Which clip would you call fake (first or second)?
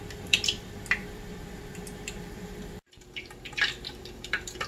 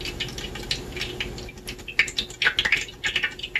first